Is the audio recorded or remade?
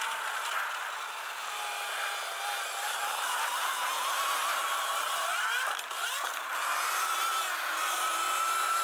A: recorded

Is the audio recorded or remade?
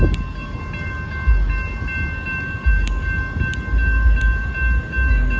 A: recorded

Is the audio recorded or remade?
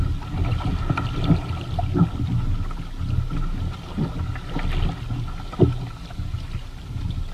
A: recorded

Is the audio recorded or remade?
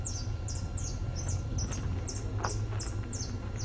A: recorded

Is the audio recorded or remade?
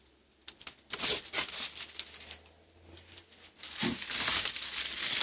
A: recorded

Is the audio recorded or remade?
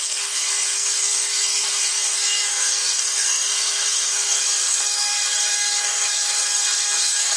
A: remade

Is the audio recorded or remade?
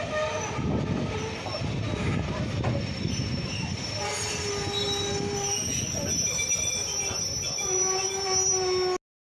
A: recorded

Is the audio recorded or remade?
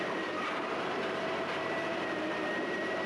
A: remade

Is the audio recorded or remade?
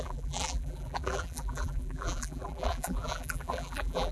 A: remade